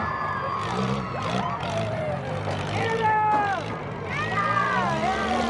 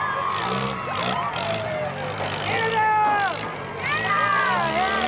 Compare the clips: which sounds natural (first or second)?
second